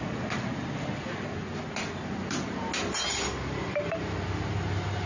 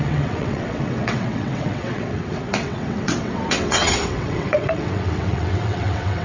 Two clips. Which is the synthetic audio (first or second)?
second